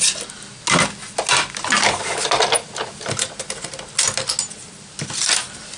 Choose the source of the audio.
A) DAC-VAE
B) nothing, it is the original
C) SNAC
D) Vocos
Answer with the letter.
B